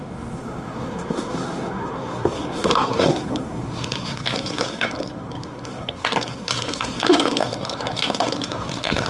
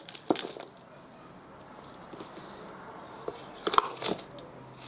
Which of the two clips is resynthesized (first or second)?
first